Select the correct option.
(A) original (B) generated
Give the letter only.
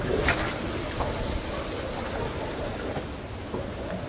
A